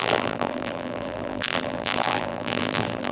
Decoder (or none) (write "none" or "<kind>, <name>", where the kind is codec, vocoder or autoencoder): vocoder, BigVGAN v2